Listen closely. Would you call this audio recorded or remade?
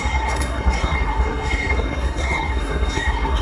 remade